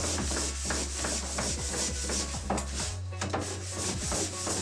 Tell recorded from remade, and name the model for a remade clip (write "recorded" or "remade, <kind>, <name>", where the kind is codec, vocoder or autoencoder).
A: recorded